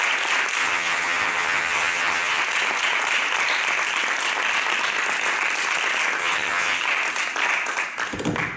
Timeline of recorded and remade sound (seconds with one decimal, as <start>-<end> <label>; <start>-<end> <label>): 0.0-0.6 recorded; 0.6-2.4 remade; 2.4-6.2 recorded; 6.2-6.8 remade; 6.8-8.6 recorded